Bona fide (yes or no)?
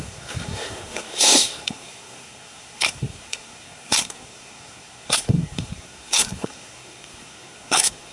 no